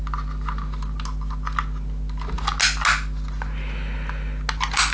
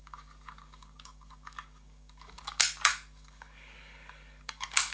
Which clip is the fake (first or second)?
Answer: second